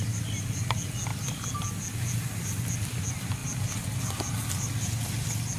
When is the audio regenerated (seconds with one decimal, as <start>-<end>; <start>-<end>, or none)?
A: none